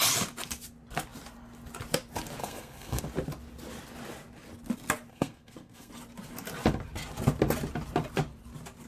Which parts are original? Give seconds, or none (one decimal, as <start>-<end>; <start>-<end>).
0.0-2.4; 3.0-5.1; 5.9-8.9